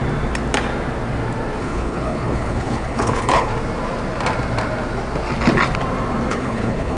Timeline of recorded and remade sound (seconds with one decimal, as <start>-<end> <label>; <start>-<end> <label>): 0.0-1.6 recorded; 1.6-3.5 remade; 3.5-6.3 recorded; 6.3-7.0 remade